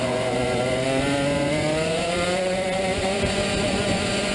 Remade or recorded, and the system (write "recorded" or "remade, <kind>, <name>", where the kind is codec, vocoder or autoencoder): remade, vocoder, Vocos